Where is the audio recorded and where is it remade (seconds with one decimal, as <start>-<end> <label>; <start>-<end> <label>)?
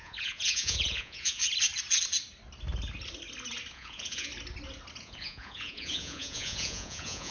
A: 0.0-1.4 remade; 1.4-3.7 recorded; 3.7-4.3 remade; 4.3-5.0 recorded; 5.0-7.3 remade